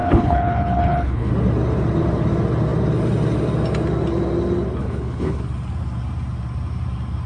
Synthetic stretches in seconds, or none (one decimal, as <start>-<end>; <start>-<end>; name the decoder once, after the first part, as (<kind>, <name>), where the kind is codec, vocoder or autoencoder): 0.0-1.3 (codec, HILCodec); 4.8-5.4